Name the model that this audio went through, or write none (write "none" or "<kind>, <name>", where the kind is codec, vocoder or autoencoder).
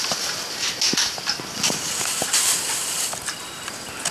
none